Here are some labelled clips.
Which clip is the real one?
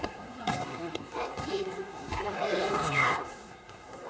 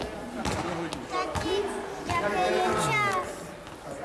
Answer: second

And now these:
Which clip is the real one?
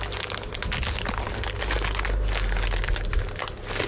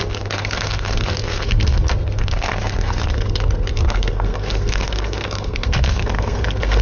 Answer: first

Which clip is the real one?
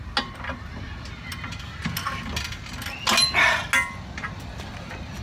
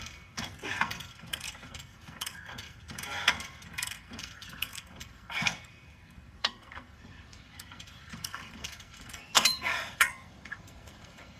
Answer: first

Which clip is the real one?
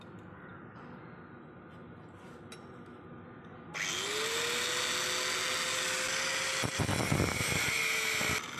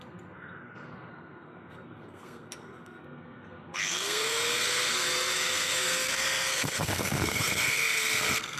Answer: first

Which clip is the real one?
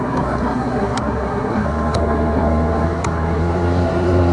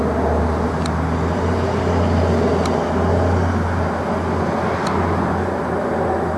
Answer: second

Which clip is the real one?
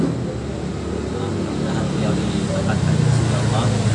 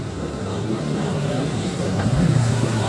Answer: first